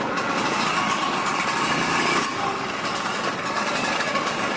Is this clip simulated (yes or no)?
yes